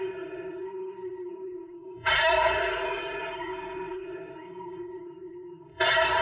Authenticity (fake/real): fake